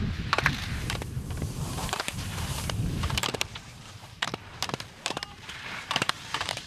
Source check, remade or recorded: remade